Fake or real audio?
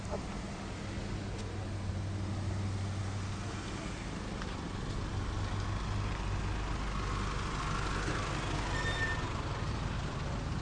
real